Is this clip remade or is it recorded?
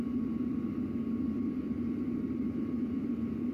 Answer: recorded